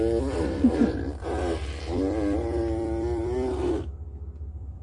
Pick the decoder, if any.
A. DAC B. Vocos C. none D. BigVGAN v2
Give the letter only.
D